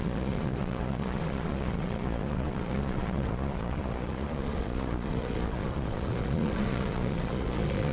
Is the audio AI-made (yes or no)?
yes